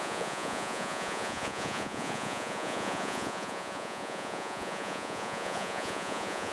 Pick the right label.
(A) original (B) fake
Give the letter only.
B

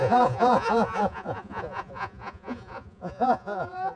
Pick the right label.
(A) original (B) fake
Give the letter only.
B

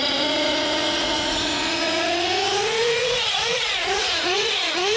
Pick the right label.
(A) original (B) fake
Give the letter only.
B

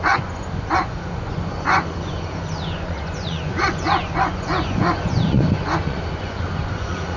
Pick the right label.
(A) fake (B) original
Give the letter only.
A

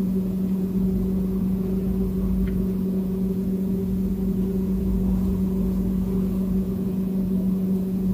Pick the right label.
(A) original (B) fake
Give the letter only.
B